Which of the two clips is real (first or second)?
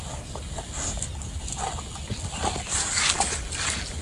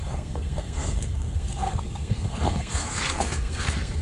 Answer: first